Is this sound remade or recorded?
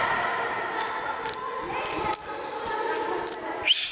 recorded